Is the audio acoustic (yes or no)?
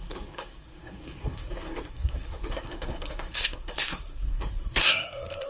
no